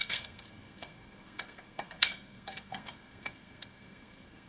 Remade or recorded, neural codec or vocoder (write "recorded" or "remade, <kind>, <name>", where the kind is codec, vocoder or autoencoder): remade, codec, SNAC